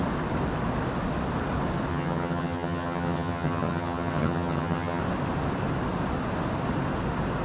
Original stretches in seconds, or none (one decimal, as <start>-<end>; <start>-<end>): 0.0-1.9; 5.0-7.4